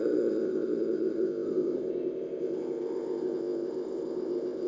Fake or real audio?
fake